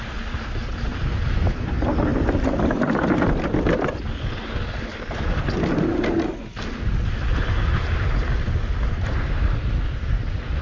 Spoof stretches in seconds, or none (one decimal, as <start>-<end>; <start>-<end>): none